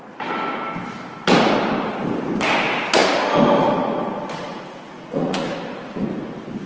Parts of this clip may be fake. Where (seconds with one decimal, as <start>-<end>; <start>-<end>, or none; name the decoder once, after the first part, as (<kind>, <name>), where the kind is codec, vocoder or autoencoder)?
4.5-6.0 (vocoder, Vocos)